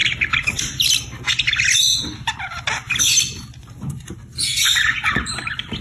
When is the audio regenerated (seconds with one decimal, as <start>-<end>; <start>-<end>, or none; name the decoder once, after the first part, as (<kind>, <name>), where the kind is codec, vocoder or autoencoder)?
4.5-5.3 (vocoder, Vocos)